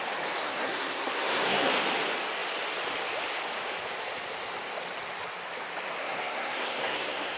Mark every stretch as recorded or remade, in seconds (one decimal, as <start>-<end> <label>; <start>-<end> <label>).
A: 0.0-0.4 recorded; 0.4-1.7 remade; 1.7-6.0 recorded; 6.0-7.4 remade